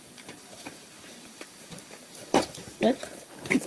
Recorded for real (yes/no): no